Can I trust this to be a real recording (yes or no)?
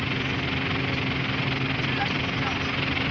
yes